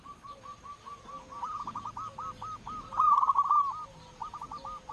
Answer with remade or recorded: recorded